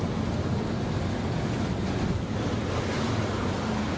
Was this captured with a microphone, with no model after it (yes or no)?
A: yes